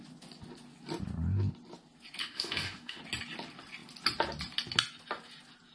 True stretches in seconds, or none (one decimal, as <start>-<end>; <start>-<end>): 0.0-2.2; 3.0-5.7